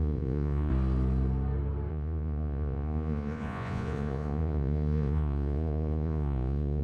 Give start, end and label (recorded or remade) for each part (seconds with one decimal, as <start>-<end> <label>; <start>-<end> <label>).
0.0-0.7 remade; 0.7-1.9 recorded; 1.9-6.8 remade